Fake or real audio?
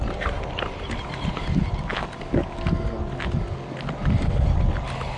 real